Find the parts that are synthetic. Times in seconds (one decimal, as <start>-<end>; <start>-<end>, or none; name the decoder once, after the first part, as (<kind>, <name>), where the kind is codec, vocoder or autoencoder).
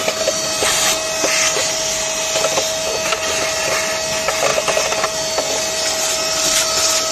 none